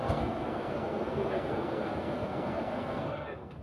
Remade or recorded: remade